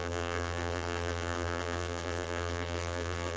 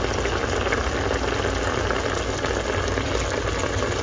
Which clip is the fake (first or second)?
first